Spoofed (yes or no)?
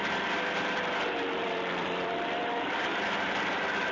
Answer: yes